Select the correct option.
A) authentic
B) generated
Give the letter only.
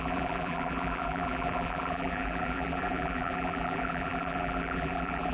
B